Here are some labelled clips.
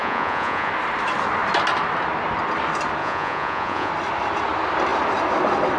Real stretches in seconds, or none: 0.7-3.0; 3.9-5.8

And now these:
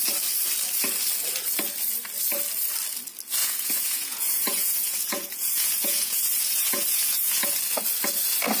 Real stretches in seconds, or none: 0.0-3.4; 7.5-8.6

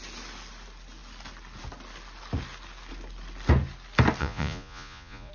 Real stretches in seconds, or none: 0.0-4.2

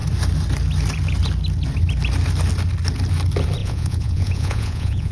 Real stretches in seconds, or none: 0.0-3.6